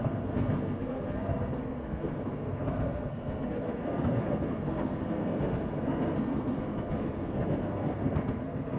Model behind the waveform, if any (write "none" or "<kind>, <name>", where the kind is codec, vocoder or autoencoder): codec, SNAC